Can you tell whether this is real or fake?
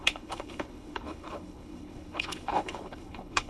fake